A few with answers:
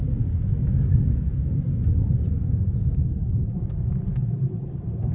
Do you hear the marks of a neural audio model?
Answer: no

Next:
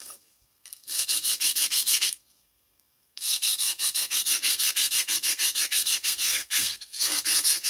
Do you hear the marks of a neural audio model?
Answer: yes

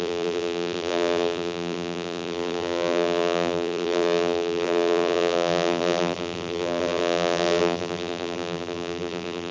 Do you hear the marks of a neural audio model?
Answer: yes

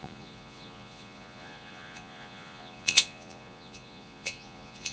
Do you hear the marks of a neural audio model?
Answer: yes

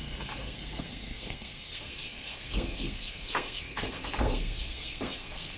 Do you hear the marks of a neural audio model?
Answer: yes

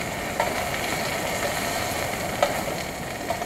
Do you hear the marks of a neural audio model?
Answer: no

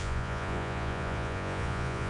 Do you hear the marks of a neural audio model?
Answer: yes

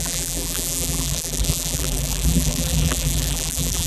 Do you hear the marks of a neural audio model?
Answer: yes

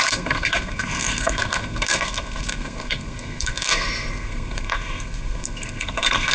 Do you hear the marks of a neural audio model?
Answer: yes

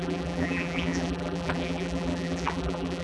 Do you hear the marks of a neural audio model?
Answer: yes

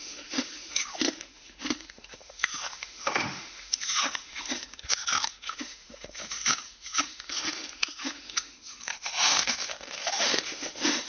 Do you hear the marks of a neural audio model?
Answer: yes